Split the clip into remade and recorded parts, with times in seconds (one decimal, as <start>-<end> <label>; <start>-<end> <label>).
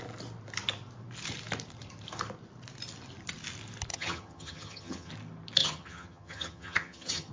0.0-3.9 recorded; 3.9-5.1 remade; 5.1-5.6 recorded; 5.6-7.3 remade